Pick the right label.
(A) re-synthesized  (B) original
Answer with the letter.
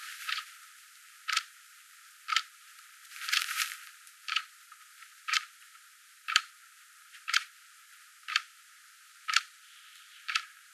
A